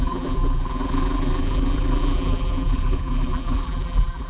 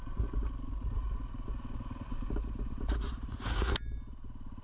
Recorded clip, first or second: second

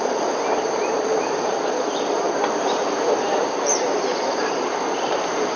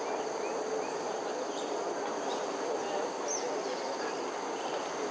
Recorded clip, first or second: second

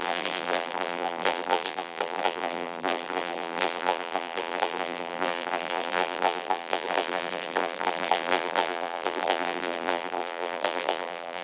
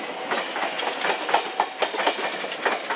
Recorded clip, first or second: second